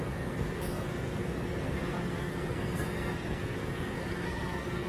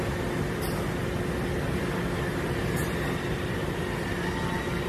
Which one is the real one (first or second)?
second